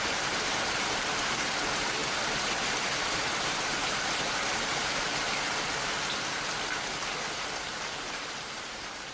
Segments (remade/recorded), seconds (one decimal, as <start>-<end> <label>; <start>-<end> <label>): 0.0-2.0 remade; 2.0-2.8 recorded; 2.8-4.8 remade; 4.8-7.6 recorded; 7.6-9.1 remade